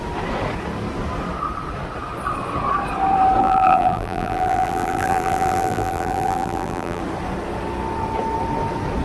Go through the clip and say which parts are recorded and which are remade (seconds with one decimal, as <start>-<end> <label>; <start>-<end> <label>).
0.0-3.4 recorded; 3.4-7.0 remade; 7.0-9.0 recorded